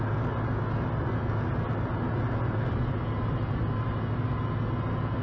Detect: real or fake real